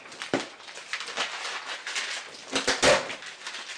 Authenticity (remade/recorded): recorded